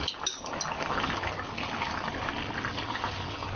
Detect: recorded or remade recorded